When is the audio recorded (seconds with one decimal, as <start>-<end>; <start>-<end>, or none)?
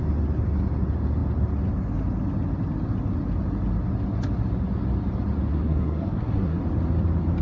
0.0-5.5; 6.6-7.4